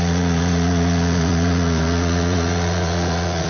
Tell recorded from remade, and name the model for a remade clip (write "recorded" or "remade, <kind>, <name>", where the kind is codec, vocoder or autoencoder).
remade, vocoder, Vocos